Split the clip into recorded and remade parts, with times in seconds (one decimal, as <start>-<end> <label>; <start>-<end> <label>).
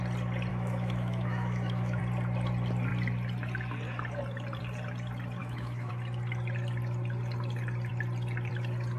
0.0-0.5 recorded; 0.5-2.0 remade; 2.0-5.4 recorded; 5.4-5.9 remade; 5.9-9.0 recorded